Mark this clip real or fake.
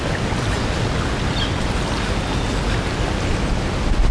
real